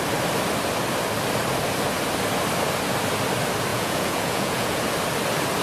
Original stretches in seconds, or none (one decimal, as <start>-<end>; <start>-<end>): 0.0-3.7; 4.8-5.6